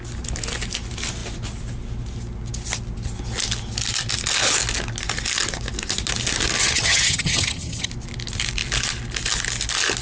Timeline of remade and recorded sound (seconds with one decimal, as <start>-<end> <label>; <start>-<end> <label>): 0.0-6.6 recorded; 6.6-7.9 remade; 7.9-10.0 recorded